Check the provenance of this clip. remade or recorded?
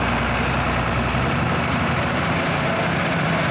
recorded